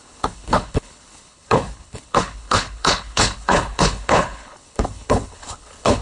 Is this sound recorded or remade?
remade